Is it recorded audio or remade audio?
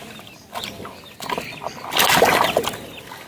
recorded